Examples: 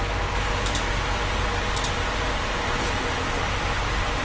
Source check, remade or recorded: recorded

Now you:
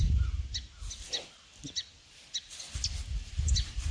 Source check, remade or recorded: recorded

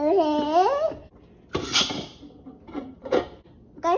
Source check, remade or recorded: recorded